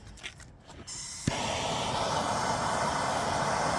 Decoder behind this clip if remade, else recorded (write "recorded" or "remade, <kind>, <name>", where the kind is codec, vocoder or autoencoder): recorded